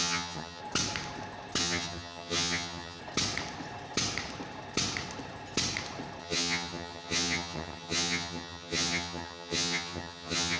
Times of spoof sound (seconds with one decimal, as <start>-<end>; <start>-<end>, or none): 0.0-0.6; 1.6-3.0; 6.2-10.6